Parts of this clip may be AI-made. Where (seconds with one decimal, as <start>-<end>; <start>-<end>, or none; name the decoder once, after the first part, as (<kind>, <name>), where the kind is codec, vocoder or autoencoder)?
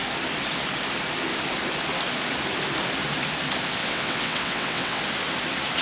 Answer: 3.8-5.0 (vocoder, WaveNeXt)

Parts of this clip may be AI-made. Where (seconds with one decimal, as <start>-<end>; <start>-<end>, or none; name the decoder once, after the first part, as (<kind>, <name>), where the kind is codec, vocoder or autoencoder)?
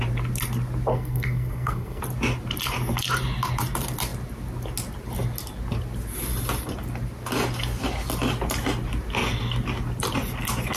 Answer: 0.9-2.0 (codec, SNAC)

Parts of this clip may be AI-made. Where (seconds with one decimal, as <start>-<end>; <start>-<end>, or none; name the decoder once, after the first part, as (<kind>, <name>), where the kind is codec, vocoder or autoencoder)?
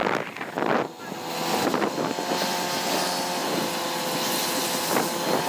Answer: none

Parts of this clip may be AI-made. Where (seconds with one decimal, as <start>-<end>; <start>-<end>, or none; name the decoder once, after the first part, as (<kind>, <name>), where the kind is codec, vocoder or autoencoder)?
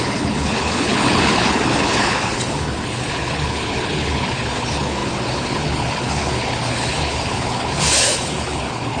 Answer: 0.0-9.0 (codec, HILCodec)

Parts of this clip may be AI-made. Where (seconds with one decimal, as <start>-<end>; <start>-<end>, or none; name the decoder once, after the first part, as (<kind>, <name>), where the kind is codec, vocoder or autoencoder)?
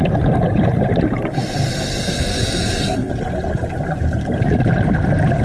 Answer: 2.0-3.1 (codec, SNAC)